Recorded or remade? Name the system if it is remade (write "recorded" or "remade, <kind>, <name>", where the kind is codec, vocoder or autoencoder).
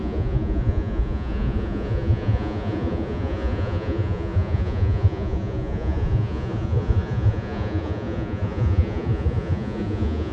remade, vocoder, Vocos